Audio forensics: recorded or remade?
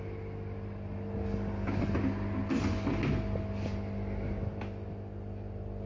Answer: recorded